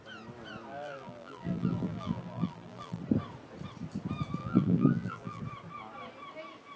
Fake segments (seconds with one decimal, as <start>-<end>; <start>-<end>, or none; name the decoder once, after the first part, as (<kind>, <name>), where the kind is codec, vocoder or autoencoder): 0.7-3.0 (vocoder, BigVGAN v2); 4.4-5.4